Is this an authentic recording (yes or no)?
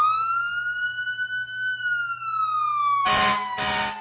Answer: yes